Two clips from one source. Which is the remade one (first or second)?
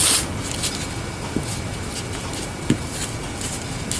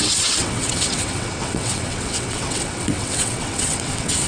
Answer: second